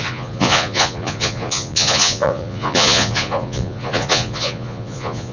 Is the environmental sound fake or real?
fake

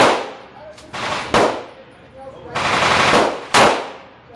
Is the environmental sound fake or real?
real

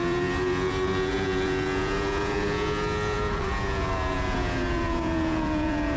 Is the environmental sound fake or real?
fake